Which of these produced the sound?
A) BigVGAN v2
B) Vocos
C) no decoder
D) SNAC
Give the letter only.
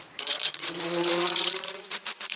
B